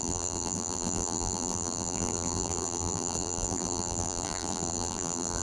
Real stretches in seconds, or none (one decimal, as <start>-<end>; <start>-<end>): none